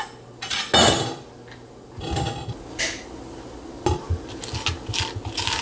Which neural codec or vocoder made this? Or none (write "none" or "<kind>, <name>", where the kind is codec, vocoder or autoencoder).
none